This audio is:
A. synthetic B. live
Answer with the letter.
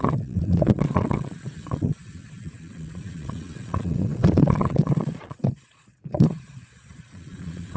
A